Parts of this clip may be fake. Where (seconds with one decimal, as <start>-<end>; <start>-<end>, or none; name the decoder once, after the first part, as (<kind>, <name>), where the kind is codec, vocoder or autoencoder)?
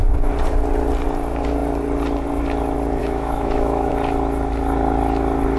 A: 3.0-3.9 (autoencoder, DAC-VAE)